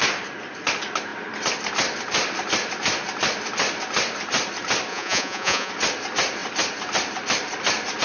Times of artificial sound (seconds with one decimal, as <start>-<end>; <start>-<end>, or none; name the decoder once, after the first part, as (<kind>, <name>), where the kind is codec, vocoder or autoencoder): 4.9-5.7 (vocoder, Vocos)